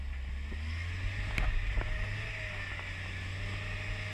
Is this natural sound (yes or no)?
yes